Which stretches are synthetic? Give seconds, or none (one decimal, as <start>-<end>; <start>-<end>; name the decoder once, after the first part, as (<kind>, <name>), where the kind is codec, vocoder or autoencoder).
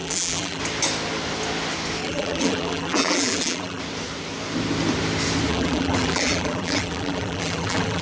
0.0-0.6 (vocoder, BigVGAN v2); 2.0-3.8; 5.5-8.0